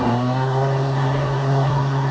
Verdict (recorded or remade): remade